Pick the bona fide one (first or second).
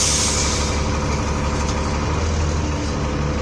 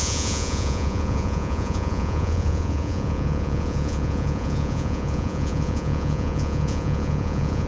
first